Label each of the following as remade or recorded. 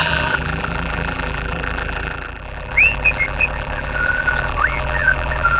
remade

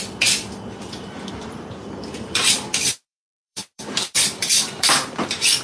remade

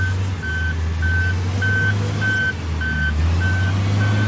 recorded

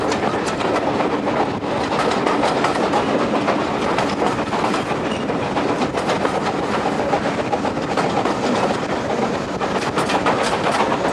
recorded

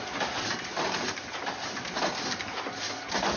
recorded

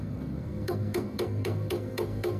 remade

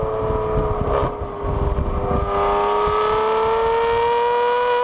recorded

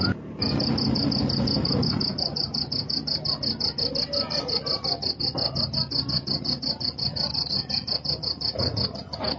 recorded